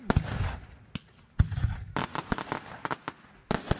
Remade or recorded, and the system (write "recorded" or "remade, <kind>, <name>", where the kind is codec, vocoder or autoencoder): recorded